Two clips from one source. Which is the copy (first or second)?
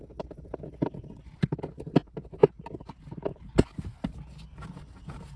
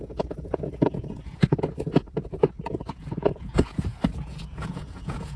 second